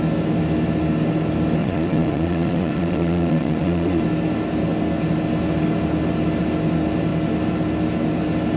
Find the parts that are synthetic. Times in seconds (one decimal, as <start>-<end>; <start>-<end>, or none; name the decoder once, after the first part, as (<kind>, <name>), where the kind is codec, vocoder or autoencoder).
1.6-4.0 (vocoder, Vocos)